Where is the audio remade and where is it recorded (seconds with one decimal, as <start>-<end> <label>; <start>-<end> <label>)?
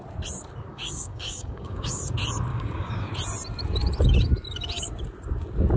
0.0-0.7 recorded; 0.7-2.0 remade; 2.0-2.5 recorded; 2.5-3.1 remade; 3.1-5.8 recorded